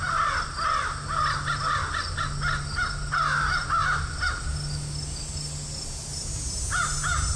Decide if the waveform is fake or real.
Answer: real